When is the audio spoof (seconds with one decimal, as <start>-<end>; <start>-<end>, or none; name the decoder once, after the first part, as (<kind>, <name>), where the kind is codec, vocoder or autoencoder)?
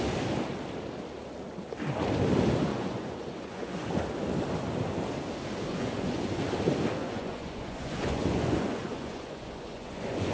2.7-3.9 (vocoder, Vocos); 5.7-6.4; 7.0-10.3